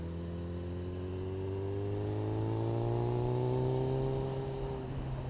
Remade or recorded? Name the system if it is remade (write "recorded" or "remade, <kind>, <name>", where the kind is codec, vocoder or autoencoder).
recorded